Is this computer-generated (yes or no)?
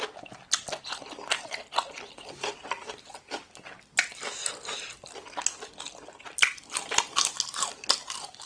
no